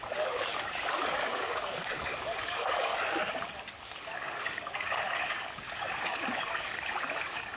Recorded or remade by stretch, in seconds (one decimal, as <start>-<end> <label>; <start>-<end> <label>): 0.0-2.9 remade; 2.9-3.7 recorded; 3.7-7.6 remade